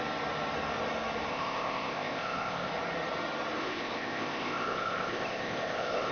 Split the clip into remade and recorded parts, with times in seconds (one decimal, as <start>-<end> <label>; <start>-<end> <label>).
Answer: 0.0-1.3 recorded; 1.3-2.7 remade; 2.7-3.6 recorded; 3.6-6.1 remade